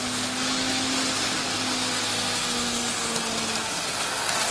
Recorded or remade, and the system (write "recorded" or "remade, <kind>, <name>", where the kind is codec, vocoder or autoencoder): recorded